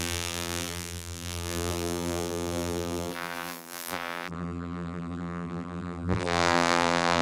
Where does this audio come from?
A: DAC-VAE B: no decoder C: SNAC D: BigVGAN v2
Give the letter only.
D